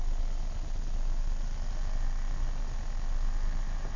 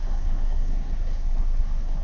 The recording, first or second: first